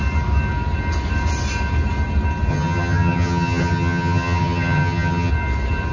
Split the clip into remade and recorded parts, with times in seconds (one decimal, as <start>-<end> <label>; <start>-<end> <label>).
0.0-2.5 recorded; 2.5-5.3 remade; 5.3-5.9 recorded